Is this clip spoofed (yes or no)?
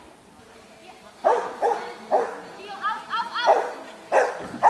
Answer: no